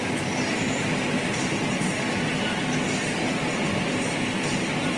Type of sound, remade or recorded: recorded